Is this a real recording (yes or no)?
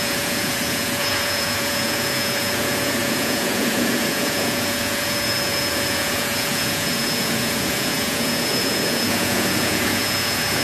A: no